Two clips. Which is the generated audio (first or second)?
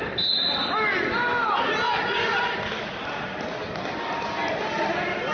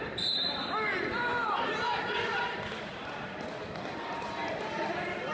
second